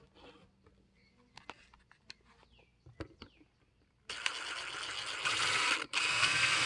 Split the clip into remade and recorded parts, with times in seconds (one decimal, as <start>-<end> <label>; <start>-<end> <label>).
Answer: 0.0-6.0 recorded; 6.0-6.7 remade